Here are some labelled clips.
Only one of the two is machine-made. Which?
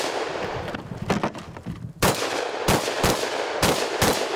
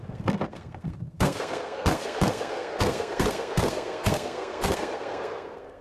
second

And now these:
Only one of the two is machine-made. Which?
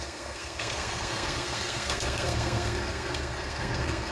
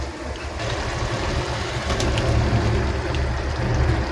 first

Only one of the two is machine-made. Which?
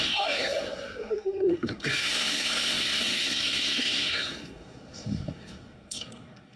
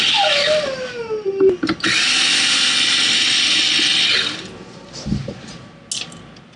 first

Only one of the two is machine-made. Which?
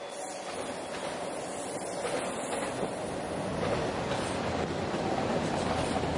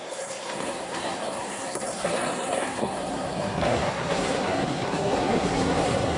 second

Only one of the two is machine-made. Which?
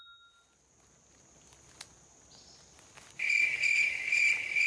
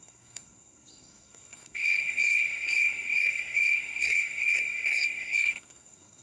second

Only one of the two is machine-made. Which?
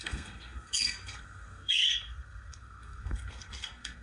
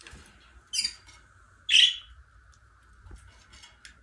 first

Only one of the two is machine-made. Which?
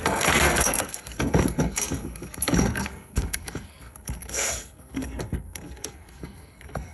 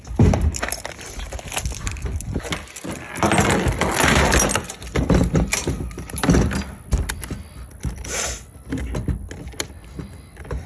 first